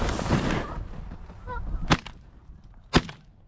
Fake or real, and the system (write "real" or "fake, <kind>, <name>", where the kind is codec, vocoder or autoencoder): real